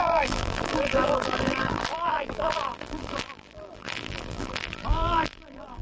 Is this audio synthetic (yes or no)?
yes